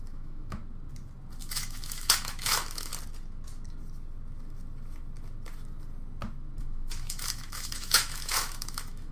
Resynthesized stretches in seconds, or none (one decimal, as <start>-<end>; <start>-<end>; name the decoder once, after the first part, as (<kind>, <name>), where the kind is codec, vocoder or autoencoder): 0.0-0.6 (autoencoder, DAC-VAE); 1.4-2.9; 6.6-9.1